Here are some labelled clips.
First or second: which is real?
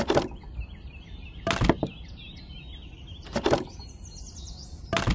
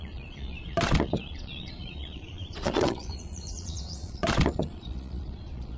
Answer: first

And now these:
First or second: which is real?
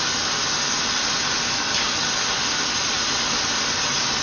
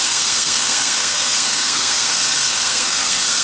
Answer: first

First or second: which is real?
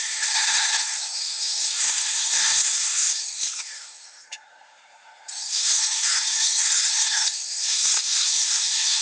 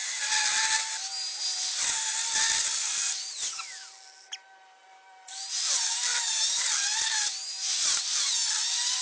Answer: second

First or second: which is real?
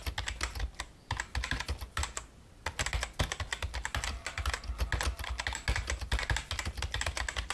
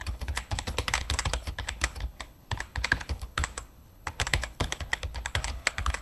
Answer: first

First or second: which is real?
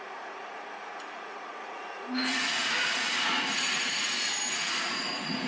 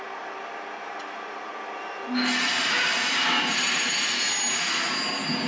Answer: second